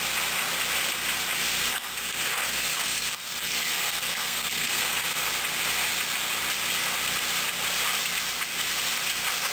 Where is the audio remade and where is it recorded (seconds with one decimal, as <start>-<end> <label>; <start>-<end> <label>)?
0.0-1.7 recorded; 1.7-5.3 remade; 5.3-9.5 recorded